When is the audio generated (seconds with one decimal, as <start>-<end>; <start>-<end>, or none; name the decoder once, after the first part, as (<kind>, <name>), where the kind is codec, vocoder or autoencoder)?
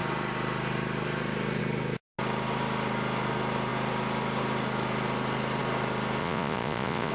6.2-7.1 (vocoder, Vocos)